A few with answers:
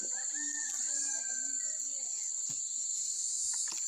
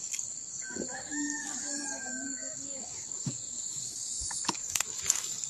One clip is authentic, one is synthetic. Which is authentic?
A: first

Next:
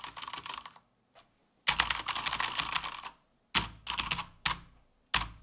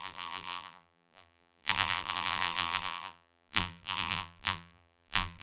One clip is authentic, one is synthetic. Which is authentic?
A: first